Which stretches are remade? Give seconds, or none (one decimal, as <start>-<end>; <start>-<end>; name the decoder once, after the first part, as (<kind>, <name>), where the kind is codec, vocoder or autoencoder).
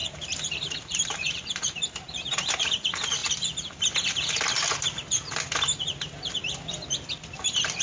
0.0-2.6 (vocoder, BigVGAN v2)